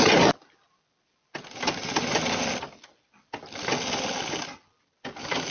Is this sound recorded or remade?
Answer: recorded